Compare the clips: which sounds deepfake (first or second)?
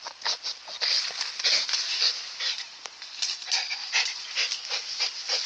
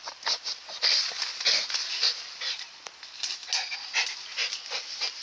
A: first